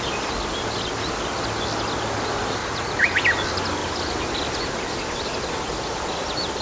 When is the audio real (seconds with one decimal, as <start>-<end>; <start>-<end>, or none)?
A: 0.0-2.6; 3.2-6.6